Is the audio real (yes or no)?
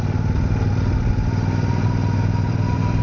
yes